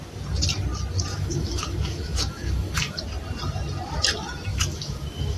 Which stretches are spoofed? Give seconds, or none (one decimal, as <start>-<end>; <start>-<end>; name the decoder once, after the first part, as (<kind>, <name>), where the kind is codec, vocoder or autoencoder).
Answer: 1.1-3.0 (autoencoder, DAC-VAE); 4.5-5.4